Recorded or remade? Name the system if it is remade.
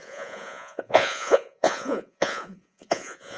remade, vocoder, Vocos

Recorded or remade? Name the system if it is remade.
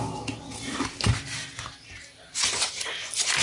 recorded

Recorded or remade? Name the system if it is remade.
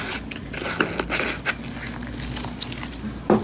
recorded